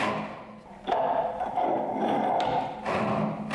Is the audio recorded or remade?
recorded